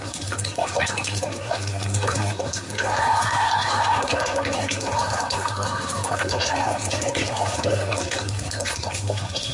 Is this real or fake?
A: fake